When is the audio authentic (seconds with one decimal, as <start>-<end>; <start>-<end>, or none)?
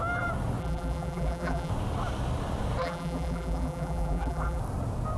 0.0-0.6; 1.7-2.8; 4.6-5.2